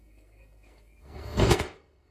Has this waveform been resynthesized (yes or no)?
yes